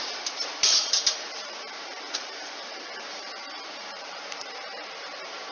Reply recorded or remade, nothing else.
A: remade